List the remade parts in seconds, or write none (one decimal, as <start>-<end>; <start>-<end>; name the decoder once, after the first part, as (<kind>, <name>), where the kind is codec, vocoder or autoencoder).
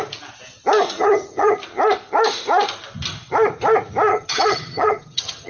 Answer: 1.0-1.6 (vocoder, HiFi-GAN); 4.1-5.5